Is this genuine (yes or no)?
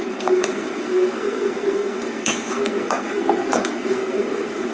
no